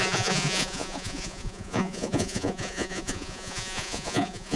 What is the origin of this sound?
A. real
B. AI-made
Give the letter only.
B